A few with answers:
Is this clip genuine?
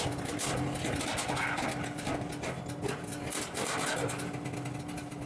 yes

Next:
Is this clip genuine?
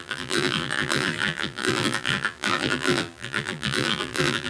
no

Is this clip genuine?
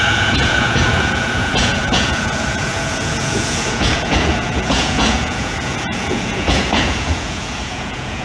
no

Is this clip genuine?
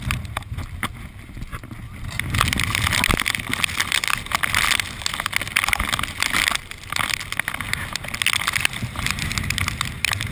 yes